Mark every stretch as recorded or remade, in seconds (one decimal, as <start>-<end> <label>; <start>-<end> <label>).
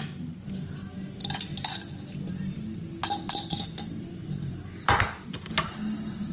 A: 0.0-6.3 recorded